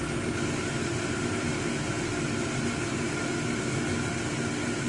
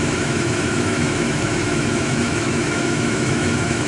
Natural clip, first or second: first